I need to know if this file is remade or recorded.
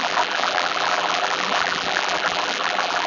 remade